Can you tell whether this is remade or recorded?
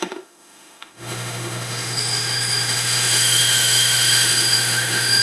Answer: remade